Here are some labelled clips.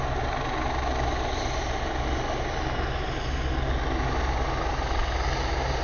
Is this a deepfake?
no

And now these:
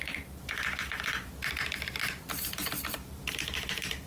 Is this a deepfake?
yes